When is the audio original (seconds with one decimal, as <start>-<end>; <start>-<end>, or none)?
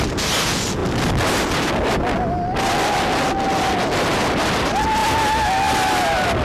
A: 0.0-6.4